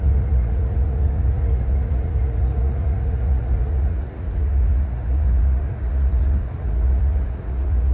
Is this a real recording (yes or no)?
no